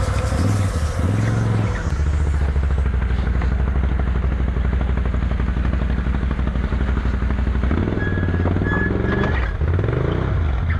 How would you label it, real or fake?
real